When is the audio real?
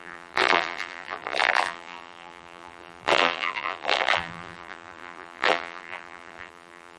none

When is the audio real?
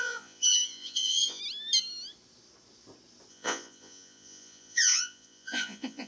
1.4-3.3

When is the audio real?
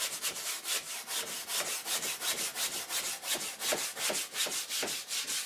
0.0-5.5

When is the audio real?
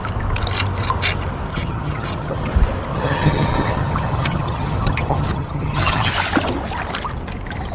0.0-1.5; 2.5-2.9; 6.1-7.7